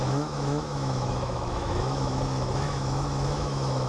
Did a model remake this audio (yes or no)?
yes